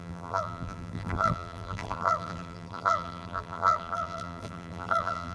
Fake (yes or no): yes